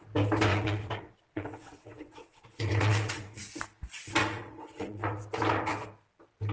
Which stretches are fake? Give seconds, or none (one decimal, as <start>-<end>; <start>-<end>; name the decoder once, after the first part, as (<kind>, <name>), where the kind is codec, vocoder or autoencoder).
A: 0.5-3.4 (vocoder, WaveNeXt); 4.2-5.2